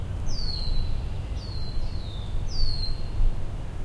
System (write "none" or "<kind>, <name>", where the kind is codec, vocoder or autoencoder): none